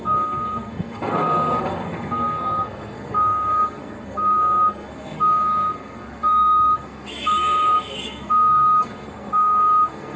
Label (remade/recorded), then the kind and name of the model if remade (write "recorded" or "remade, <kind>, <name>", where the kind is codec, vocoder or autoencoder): remade, codec, SNAC